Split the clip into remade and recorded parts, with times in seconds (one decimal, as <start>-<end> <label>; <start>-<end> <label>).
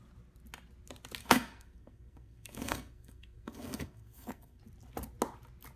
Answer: 0.0-1.2 recorded; 1.2-4.6 remade; 4.6-5.8 recorded